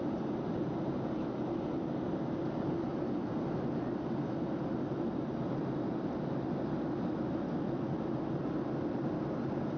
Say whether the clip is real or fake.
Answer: real